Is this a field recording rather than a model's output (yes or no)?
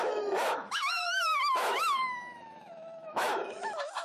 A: no